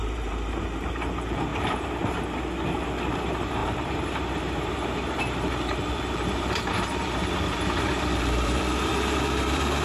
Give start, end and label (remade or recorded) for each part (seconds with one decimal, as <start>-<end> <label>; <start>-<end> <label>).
0.0-1.5 remade; 1.5-3.1 recorded; 3.1-9.8 remade